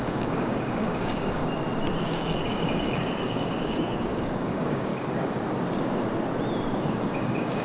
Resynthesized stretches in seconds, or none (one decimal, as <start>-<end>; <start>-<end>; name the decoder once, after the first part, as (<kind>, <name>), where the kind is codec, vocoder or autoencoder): 0.0-1.4 (codec, DAC); 2.0-4.9; 6.8-7.6